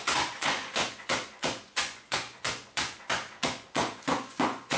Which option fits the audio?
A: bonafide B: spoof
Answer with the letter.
B